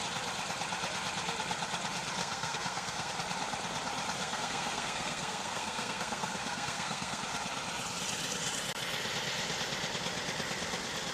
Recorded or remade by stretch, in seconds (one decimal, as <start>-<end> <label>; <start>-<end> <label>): 0.0-2.2 recorded; 2.2-3.1 remade; 3.1-4.2 recorded; 4.2-7.2 remade; 7.2-11.1 recorded